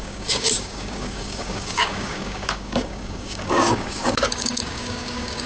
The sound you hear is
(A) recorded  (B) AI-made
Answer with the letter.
B